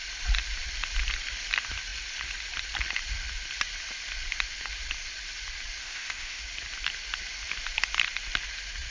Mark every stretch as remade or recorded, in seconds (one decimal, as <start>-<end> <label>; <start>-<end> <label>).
0.0-5.8 recorded; 5.8-6.4 remade; 6.4-8.9 recorded

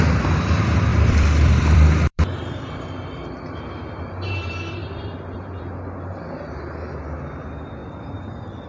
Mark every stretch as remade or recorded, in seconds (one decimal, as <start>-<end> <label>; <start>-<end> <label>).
0.0-0.9 recorded; 0.9-2.6 remade; 2.6-4.8 recorded; 4.8-5.6 remade; 5.6-7.8 recorded; 7.8-8.7 remade

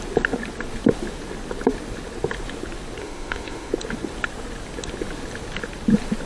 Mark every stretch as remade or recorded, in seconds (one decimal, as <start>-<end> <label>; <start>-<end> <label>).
0.0-3.0 recorded; 3.0-3.7 remade; 3.7-6.3 recorded